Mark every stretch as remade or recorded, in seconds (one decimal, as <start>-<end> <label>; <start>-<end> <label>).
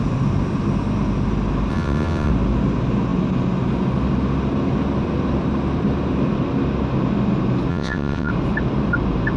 0.0-1.7 recorded; 1.7-2.3 remade; 2.3-7.7 recorded; 7.7-8.3 remade; 8.3-9.4 recorded